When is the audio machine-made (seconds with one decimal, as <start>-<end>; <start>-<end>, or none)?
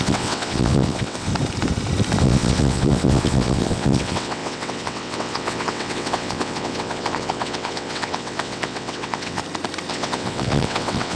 0.0-1.3; 2.2-9.4; 9.9-11.2